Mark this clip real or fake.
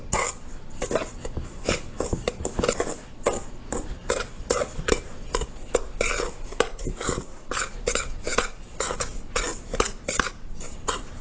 real